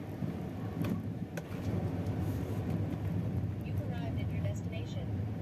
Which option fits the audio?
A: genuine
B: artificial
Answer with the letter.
A